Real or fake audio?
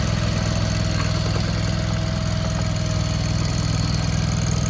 real